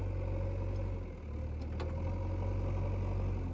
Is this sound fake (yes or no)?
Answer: no